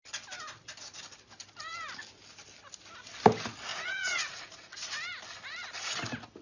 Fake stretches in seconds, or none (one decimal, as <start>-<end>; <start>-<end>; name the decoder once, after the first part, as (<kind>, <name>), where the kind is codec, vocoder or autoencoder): 3.7-4.9 (vocoder, Vocos)